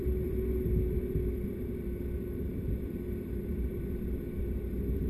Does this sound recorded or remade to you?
remade